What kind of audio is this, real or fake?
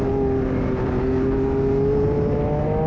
real